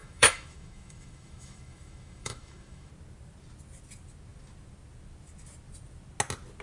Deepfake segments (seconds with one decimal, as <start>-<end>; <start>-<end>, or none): 0.0-2.9